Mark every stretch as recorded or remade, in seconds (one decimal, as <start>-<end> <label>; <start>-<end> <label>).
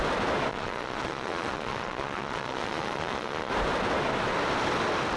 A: 0.0-0.5 recorded; 0.5-3.5 remade; 3.5-5.2 recorded